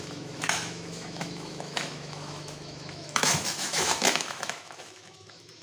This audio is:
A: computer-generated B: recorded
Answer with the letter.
A